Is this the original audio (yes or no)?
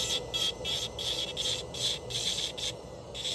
yes